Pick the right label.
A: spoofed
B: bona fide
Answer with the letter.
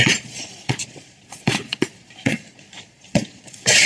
A